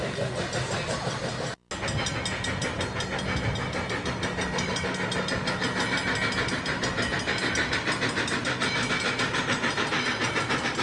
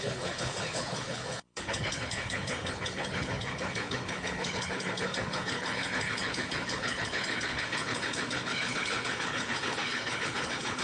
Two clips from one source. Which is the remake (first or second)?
second